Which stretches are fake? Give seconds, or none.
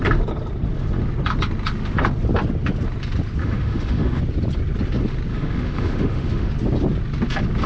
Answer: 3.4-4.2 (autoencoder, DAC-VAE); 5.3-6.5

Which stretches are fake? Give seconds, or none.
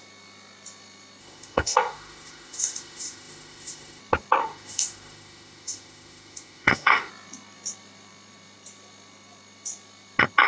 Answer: 1.2-4.0 (autoencoder, DAC-VAE); 4.4-7.1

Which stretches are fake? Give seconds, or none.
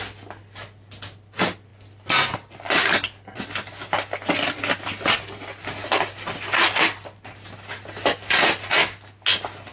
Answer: none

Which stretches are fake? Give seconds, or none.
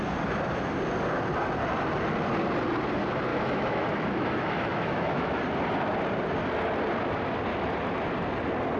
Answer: 3.3-5.4 (autoencoder, DAC-VAE)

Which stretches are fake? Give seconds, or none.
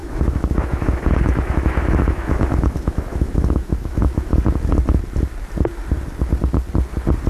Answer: 0.0-4.4 (autoencoder, DAC-VAE)